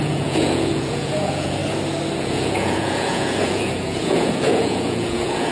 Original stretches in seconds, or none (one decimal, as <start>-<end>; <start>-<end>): 1.6-2.2